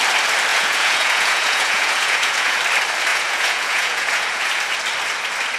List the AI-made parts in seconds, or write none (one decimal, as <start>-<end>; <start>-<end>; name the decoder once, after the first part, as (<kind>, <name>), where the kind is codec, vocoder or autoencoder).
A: 0.5-2.6 (vocoder, Vocos); 3.1-4.5